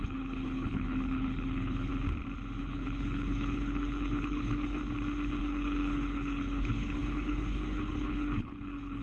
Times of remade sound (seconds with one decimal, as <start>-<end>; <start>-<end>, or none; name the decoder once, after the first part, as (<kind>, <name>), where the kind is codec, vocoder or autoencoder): 0.0-1.9 (codec, HILCodec); 2.6-4.8; 5.4-9.0